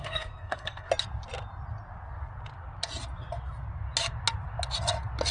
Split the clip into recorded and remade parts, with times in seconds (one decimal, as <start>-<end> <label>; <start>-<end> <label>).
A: 0.0-0.9 remade; 0.9-5.3 recorded